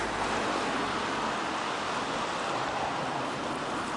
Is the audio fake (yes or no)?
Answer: no